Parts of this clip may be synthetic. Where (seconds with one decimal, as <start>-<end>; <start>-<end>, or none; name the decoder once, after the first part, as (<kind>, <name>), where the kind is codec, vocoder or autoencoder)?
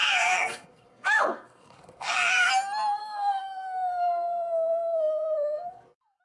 0.0-2.5 (codec, SNAC); 3.0-6.2